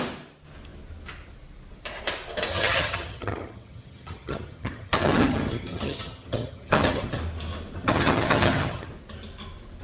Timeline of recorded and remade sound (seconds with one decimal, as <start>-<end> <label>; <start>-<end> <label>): 0.0-2.5 recorded; 2.5-7.2 remade; 7.2-7.8 recorded; 7.8-8.9 remade; 8.9-9.8 recorded